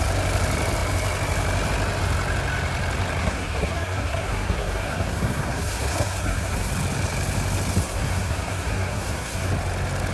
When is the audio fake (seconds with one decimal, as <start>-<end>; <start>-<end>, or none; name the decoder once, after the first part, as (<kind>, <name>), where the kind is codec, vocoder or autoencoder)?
3.2-6.7 (codec, SNAC); 7.8-9.5

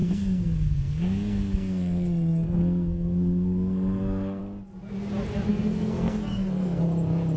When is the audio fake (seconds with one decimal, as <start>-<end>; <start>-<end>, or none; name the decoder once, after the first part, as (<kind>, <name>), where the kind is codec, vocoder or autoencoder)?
0.0-4.4 (codec, SNAC); 5.5-6.8

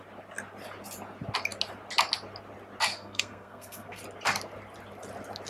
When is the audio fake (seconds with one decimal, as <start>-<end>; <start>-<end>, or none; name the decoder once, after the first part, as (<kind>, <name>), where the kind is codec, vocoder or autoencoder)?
2.9-4.0 (codec, SNAC)

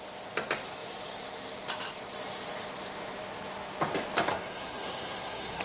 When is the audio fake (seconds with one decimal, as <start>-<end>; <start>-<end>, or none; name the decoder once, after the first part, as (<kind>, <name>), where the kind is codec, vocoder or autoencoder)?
4.3-5.6 (codec, SNAC)

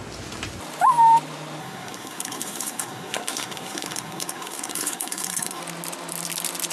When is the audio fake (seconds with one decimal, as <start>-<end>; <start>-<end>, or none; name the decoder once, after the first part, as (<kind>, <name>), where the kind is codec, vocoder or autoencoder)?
1.6-5.6 (codec, SNAC)

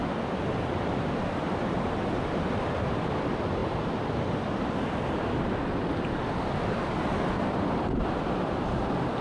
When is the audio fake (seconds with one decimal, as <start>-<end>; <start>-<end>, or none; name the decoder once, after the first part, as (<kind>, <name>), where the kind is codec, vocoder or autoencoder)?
none

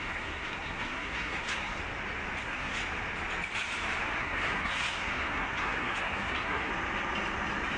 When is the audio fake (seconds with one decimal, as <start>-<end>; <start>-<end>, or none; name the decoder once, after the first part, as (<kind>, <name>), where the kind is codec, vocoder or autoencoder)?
0.0-1.8 (codec, SNAC); 2.4-2.8; 4.0-6.7

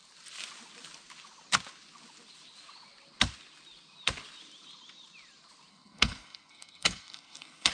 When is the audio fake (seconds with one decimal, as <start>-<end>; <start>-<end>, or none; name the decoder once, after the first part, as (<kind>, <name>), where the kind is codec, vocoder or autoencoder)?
5.7-7.7 (codec, SNAC)